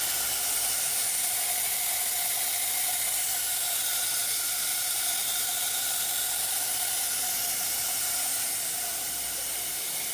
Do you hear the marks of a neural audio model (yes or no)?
no